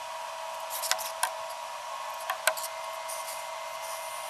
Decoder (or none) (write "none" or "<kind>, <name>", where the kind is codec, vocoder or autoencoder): none